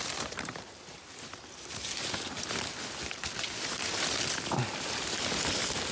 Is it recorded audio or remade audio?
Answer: recorded